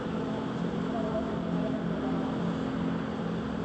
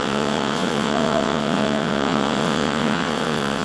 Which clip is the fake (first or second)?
second